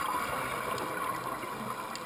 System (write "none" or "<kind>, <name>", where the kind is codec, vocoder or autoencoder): none